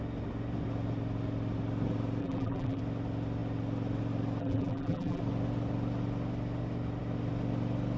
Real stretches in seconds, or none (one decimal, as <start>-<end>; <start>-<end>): 0.0-2.2; 2.8-4.4; 5.2-8.0